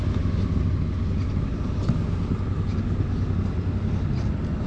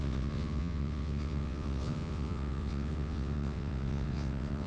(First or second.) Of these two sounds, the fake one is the second